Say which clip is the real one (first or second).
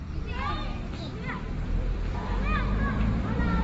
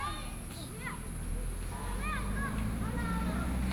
second